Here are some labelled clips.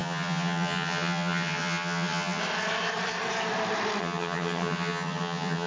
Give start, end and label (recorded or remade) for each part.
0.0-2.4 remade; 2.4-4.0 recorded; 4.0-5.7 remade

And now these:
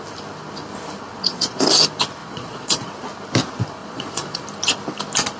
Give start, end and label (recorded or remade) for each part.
0.0-1.1 recorded; 1.1-1.6 remade; 1.6-2.2 recorded; 2.2-2.9 remade; 2.9-3.8 recorded; 3.8-4.4 remade; 4.4-5.4 recorded